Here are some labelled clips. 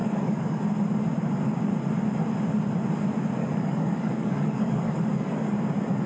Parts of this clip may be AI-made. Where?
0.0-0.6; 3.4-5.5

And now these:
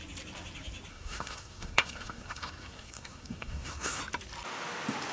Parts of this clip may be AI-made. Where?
0.9-4.0

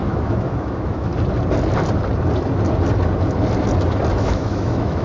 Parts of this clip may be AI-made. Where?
0.0-1.1; 4.1-5.0

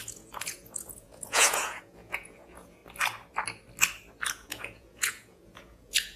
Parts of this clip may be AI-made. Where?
0.0-2.8; 4.3-6.2

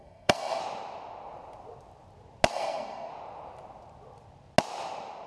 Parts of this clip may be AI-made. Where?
0.0-0.6; 2.5-3.1

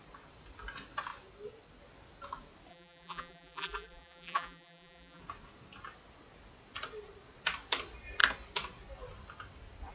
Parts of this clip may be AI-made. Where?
2.7-5.2